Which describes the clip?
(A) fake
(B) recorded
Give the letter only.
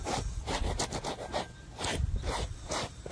A